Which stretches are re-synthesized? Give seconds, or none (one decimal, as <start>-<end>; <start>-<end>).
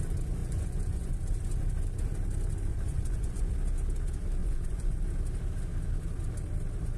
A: 0.4-1.1; 2.7-3.5; 4.4-5.0